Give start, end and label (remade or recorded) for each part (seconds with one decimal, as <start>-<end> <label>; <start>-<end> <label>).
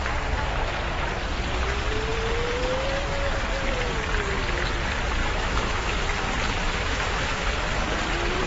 0.0-5.2 recorded; 5.2-6.0 remade; 6.0-6.6 recorded; 6.6-7.5 remade; 7.5-8.5 recorded